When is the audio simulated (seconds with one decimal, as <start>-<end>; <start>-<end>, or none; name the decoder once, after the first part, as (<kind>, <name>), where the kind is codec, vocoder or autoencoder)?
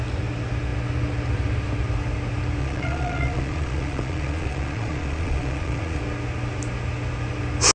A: 2.6-6.0 (vocoder, Vocos)